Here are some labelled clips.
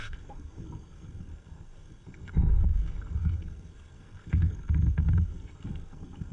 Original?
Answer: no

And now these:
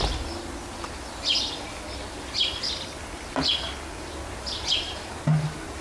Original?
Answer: yes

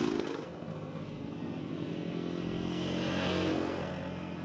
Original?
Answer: no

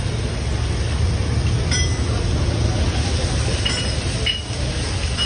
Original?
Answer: yes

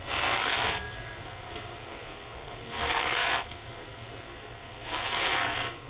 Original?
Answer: no